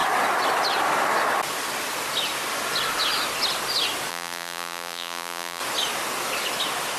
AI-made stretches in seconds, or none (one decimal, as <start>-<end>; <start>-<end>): 4.1-5.6